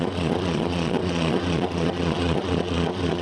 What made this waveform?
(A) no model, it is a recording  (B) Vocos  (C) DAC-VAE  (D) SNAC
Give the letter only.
B